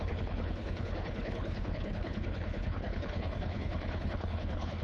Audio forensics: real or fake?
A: fake